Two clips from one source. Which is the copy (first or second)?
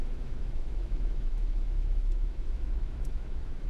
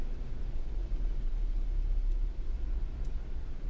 first